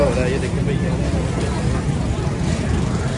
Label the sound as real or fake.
real